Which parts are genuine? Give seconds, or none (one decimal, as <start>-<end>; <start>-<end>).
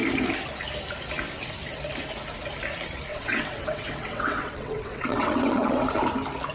0.0-3.1; 5.9-6.5